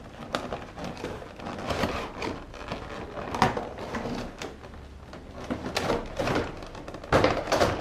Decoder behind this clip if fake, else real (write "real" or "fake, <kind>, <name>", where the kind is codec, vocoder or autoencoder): real